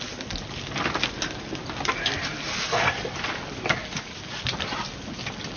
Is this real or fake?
real